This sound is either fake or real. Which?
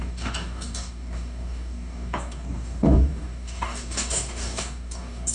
fake